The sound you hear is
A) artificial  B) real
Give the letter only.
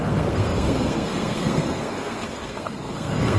A